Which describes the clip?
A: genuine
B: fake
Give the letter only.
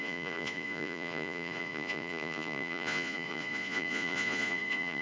B